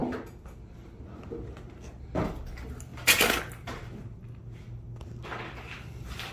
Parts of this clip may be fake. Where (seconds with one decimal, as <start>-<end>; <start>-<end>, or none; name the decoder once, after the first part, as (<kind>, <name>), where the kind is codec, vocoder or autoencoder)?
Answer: none